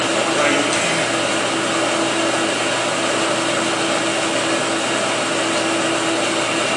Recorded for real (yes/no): yes